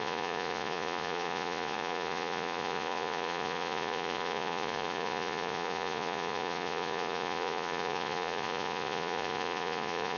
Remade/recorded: remade